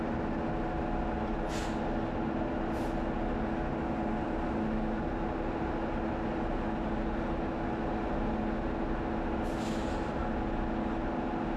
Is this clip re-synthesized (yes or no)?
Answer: no